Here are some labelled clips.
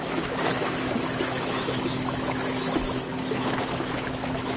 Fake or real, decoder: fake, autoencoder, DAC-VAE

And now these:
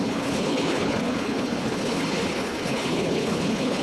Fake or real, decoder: fake, codec, HILCodec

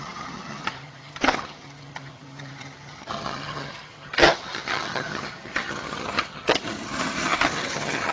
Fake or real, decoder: fake, vocoder, HiFi-GAN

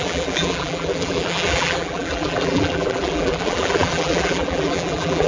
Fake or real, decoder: fake, vocoder, BigVGAN v2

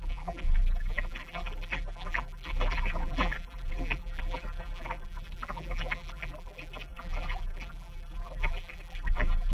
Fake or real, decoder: fake, vocoder, BigVGAN v2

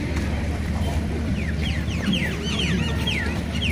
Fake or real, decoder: fake, vocoder, BigVGAN v2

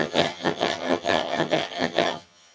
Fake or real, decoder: fake, vocoder, HiFi-GAN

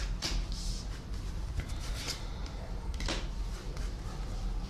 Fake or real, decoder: real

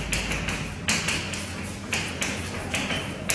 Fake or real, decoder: real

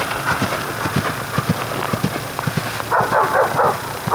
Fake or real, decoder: real